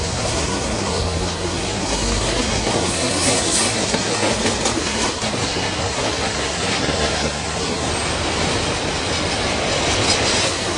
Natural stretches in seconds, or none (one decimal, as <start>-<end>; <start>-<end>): 4.3-4.8; 7.9-10.4